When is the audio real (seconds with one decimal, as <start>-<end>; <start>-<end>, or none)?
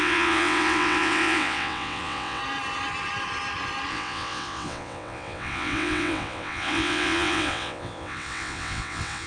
2.4-3.9